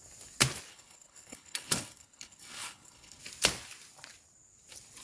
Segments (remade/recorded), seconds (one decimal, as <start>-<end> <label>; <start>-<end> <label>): 0.0-0.7 recorded; 0.7-3.2 remade; 3.2-5.0 recorded